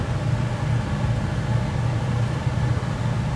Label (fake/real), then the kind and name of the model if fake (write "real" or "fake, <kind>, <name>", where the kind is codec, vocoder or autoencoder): real